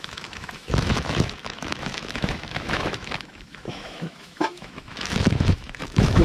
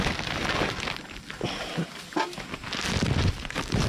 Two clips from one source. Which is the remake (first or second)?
first